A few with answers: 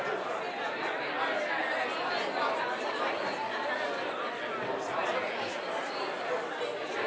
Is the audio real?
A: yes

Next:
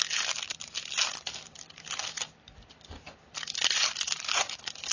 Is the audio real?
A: yes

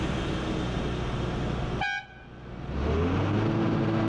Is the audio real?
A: yes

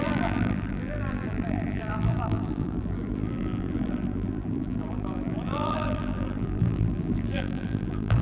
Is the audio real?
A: no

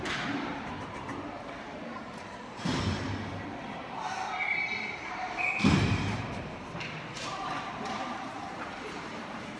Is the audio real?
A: no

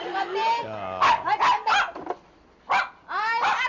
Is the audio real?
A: yes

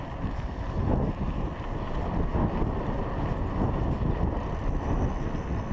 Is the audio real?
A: yes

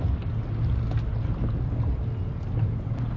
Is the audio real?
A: yes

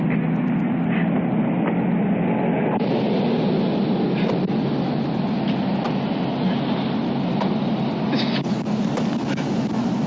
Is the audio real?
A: yes